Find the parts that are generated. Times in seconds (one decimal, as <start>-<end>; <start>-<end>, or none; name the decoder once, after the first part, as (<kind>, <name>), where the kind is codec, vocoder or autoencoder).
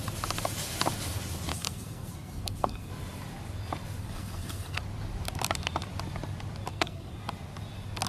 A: 1.5-2.9 (codec, SNAC); 4.0-4.8; 6.7-7.2